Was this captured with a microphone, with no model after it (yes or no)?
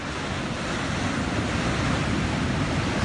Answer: yes